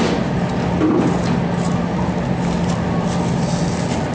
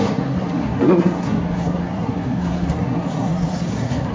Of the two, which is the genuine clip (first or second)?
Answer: first